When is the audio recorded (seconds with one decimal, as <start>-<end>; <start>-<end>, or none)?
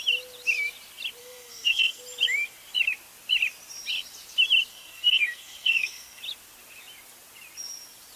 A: 0.0-1.2; 2.0-4.7; 6.2-8.2